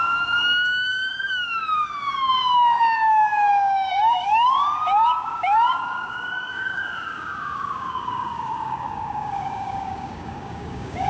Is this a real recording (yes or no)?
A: no